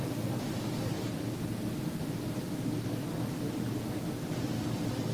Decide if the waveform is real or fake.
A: real